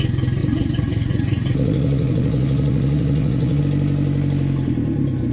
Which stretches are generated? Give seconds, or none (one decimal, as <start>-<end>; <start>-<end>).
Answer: 0.4-3.6